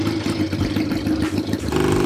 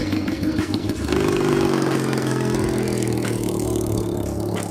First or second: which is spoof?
second